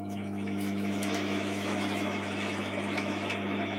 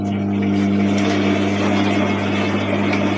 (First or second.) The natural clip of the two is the second